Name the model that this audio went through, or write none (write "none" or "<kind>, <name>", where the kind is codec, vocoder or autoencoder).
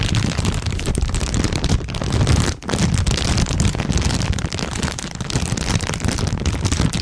vocoder, BigVGAN v2